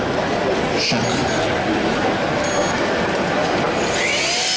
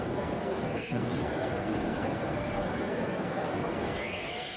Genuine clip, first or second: first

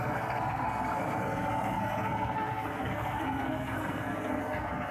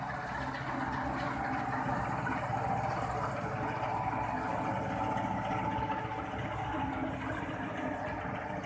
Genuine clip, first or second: second